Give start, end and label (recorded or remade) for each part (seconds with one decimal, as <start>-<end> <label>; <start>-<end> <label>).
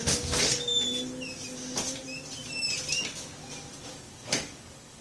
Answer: 0.0-3.9 recorded; 3.9-5.0 remade